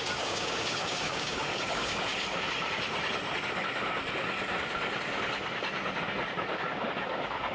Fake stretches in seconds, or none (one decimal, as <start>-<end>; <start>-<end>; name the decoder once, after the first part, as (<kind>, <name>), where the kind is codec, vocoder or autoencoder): 0.0-2.1 (codec, DAC); 6.5-7.5